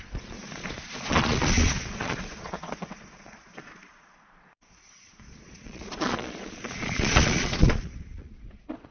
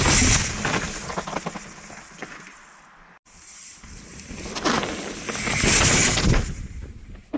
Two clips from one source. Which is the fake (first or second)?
first